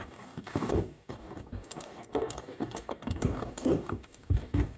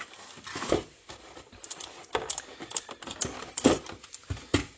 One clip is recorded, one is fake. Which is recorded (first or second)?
second